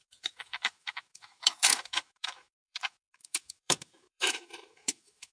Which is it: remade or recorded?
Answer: remade